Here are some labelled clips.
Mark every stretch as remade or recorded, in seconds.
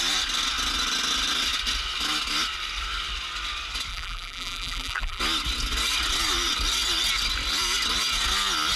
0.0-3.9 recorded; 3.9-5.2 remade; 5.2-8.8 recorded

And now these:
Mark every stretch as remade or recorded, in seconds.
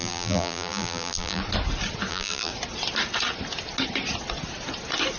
0.0-1.4 remade; 1.4-2.1 recorded; 2.1-2.5 remade; 2.5-5.2 recorded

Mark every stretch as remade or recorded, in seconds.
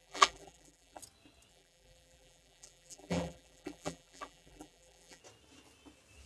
0.0-1.0 remade; 1.0-1.5 recorded; 1.5-5.2 remade; 5.2-6.3 recorded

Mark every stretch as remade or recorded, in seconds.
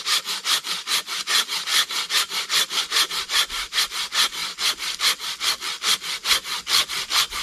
0.0-1.7 recorded; 1.7-3.1 remade; 3.1-7.4 recorded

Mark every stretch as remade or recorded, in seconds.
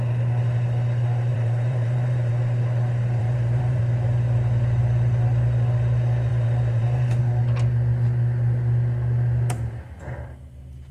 0.0-1.3 recorded; 1.3-2.3 remade; 2.3-3.2 recorded; 3.2-3.8 remade; 3.8-6.3 recorded; 6.3-7.2 remade; 7.2-10.9 recorded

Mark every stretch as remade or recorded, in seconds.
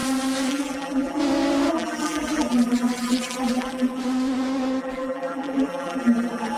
0.0-0.5 recorded; 0.5-1.2 remade; 1.2-1.7 recorded; 1.7-4.0 remade; 4.0-4.8 recorded; 4.8-6.6 remade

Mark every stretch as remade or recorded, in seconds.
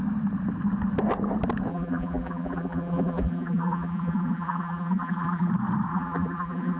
0.0-1.7 recorded; 1.7-5.5 remade; 5.5-5.9 recorded; 5.9-6.8 remade